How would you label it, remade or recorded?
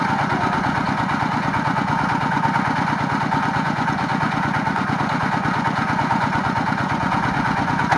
remade